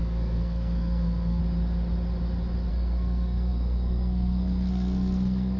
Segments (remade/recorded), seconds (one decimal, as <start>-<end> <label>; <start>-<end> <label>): 0.0-1.4 remade; 1.4-2.7 recorded; 2.7-5.6 remade